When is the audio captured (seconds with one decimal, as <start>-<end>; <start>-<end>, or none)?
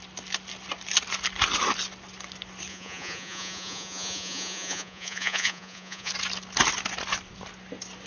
0.0-2.7; 6.1-8.1